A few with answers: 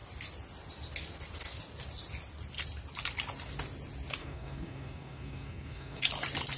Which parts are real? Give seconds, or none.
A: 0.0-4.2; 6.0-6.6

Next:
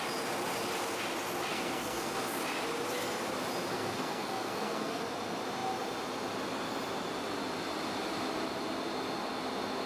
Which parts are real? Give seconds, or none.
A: 0.0-1.5; 2.4-3.7; 5.0-9.9

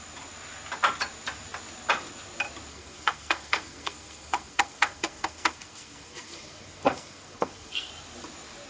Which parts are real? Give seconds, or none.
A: 0.0-2.7; 7.9-8.7

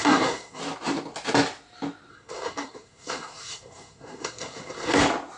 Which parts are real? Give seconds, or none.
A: 0.6-2.1; 5.0-5.4

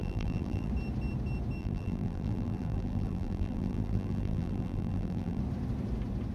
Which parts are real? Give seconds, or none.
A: 0.7-1.6; 5.4-6.3